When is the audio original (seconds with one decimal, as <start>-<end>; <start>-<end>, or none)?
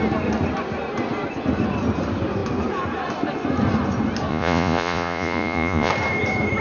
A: 0.0-4.3; 5.9-6.6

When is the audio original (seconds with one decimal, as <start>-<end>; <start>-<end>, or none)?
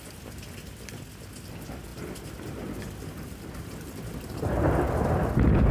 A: 0.0-5.7